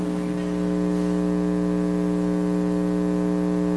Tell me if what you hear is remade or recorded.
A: recorded